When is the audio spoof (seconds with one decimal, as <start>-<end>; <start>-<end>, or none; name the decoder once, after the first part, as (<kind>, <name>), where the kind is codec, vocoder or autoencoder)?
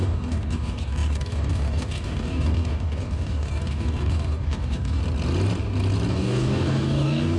0.0-5.0 (codec, DAC); 6.1-7.4